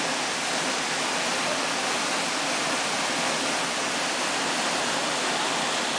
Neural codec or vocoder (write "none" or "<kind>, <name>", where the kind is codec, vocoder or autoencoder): none